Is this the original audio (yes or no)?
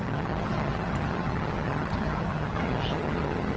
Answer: no